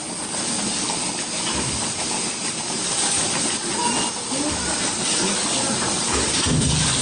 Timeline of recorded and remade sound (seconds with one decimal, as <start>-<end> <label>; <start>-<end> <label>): 0.0-7.0 recorded

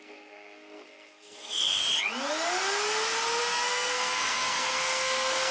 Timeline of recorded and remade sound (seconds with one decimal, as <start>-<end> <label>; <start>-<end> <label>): 0.0-1.8 remade; 1.8-3.4 recorded; 3.4-5.5 remade

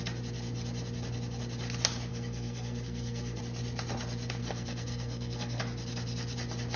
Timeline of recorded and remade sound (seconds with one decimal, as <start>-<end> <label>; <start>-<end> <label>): 0.0-2.1 recorded; 2.1-3.4 remade; 3.4-4.4 recorded; 4.4-5.6 remade; 5.6-6.8 recorded

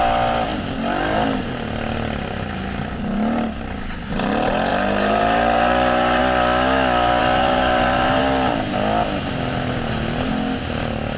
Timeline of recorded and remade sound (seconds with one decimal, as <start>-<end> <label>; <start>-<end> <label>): 0.0-4.7 recorded; 4.7-6.2 remade; 6.2-7.2 recorded; 7.2-8.2 remade; 8.2-11.2 recorded

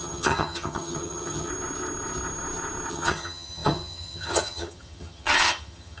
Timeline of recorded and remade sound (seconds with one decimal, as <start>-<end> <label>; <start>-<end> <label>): 0.0-1.5 remade; 1.5-2.9 recorded; 2.9-6.0 remade

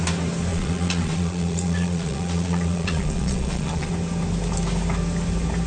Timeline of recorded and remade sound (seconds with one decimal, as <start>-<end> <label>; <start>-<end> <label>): 0.0-0.5 recorded; 0.5-3.9 remade; 3.9-5.7 recorded